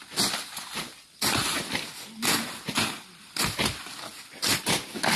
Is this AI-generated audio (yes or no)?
no